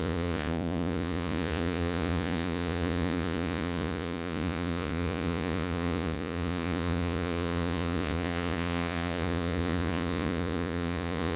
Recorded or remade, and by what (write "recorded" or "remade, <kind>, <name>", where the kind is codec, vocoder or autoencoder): remade, vocoder, Vocos